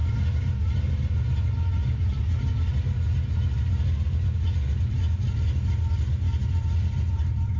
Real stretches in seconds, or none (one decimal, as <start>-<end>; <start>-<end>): 0.0-7.6